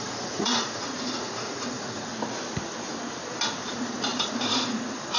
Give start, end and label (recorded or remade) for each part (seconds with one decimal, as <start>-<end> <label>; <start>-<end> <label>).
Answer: 0.0-2.1 remade; 2.1-3.6 recorded; 3.6-5.2 remade